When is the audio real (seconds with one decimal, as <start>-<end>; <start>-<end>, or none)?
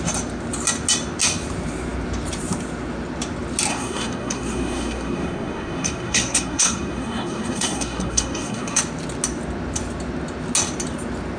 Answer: 0.0-3.7; 8.8-11.4